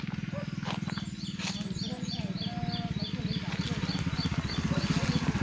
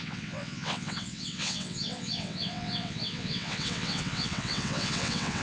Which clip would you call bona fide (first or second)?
first